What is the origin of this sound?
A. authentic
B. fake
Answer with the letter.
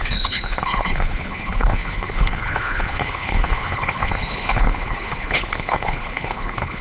B